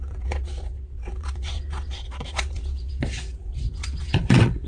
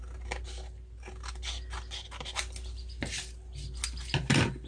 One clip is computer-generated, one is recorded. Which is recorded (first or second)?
second